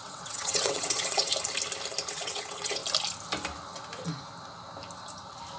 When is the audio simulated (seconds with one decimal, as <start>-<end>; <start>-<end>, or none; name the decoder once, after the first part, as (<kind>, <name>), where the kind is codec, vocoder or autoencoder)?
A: 0.0-1.3 (vocoder, WaveNeXt); 2.1-2.8